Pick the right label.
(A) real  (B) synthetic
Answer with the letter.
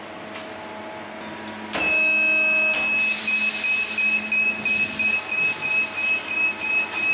A